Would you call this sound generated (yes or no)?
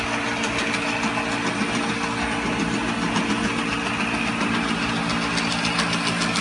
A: no